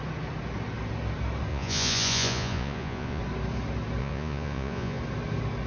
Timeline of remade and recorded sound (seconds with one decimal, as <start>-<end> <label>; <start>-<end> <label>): 0.0-1.5 recorded; 1.5-3.2 remade; 3.2-4.0 recorded; 4.0-5.0 remade; 5.0-5.7 recorded